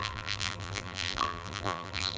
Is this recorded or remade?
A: remade